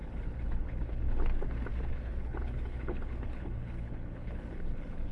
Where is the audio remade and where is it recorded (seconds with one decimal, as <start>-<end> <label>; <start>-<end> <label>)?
0.0-1.3 remade; 1.3-1.9 recorded; 1.9-5.1 remade